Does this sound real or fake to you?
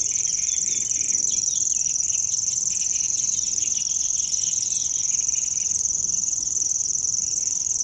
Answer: fake